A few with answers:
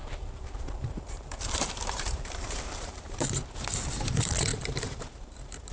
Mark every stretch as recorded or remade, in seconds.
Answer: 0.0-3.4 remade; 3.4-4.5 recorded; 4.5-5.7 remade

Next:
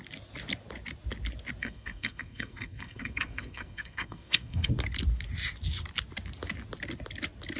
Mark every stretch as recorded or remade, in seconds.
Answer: 0.0-1.6 recorded; 1.6-4.7 remade; 4.7-7.6 recorded

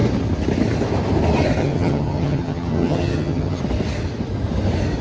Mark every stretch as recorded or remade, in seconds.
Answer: 0.0-1.6 recorded; 1.6-3.6 remade; 3.6-5.0 recorded

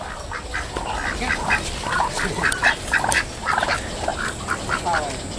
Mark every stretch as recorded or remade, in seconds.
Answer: 0.0-5.4 recorded

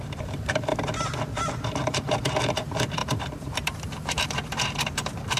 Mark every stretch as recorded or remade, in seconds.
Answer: 0.0-0.7 remade; 0.7-1.5 recorded; 1.5-5.4 remade

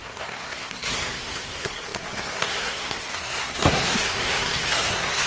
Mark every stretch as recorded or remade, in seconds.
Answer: 0.0-5.3 remade

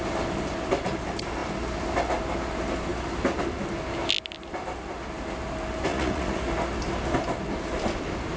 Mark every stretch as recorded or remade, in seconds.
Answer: 0.0-5.9 recorded; 5.9-6.4 remade; 6.4-8.4 recorded